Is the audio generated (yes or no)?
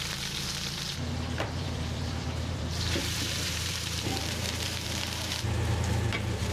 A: yes